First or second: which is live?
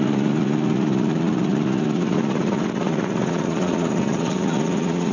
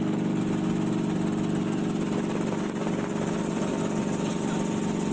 second